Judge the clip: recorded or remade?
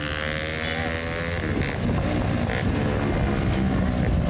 recorded